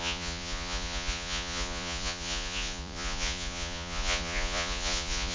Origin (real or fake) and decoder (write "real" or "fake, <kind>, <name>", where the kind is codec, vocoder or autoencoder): fake, vocoder, Vocos